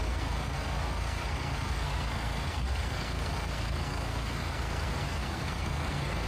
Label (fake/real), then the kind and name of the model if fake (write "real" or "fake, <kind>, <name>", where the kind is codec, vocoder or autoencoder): fake, codec, SNAC